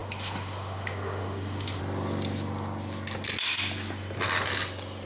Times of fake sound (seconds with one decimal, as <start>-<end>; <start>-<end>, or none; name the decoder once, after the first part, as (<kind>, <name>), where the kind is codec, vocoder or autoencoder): 0.0-1.8 (autoencoder, DAC-VAE)

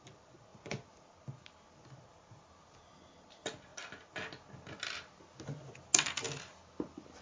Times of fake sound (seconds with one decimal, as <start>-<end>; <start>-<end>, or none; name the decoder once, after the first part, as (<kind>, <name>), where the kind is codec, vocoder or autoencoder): none